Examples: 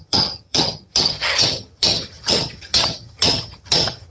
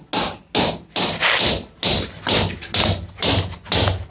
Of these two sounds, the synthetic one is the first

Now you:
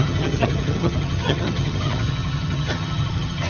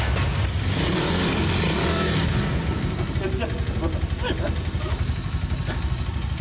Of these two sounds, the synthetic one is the first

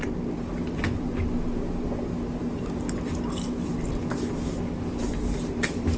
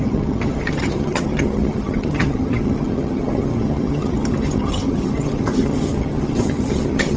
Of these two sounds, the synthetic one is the second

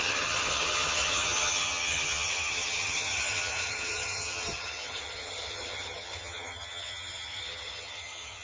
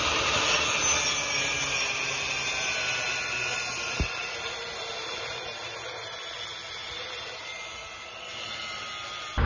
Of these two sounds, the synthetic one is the first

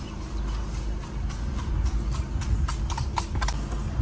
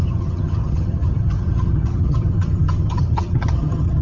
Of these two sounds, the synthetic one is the second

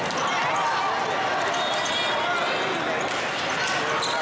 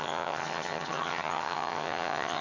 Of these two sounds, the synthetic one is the second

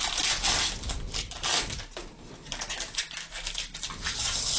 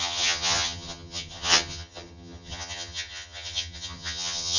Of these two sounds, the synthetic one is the second